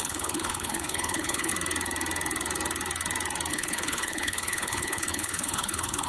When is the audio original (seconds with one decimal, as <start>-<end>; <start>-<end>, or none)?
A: 1.5-3.5

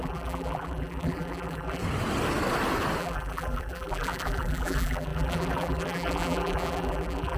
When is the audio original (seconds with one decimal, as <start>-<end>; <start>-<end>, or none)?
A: 1.8-3.0

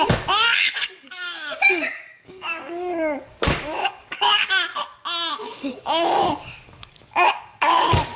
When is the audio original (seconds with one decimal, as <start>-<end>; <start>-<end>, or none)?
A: 4.7-5.3

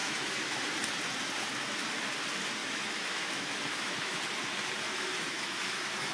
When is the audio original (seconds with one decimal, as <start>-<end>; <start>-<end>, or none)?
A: 0.6-2.6; 4.2-4.9

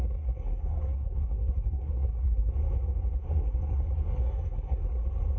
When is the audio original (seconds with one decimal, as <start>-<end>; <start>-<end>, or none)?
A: 2.5-3.2; 5.0-5.4

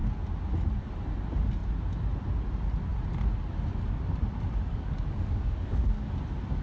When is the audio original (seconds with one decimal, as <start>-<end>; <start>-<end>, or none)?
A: 0.0-4.7; 6.1-6.6

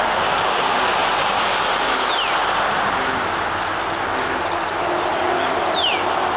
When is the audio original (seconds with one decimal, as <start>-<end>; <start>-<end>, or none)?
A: 0.0-6.4

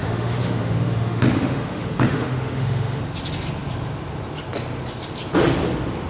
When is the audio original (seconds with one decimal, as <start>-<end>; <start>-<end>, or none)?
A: 3.0-6.1